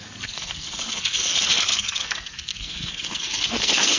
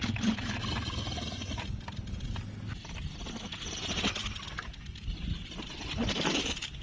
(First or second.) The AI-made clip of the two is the first